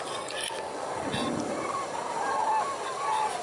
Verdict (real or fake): real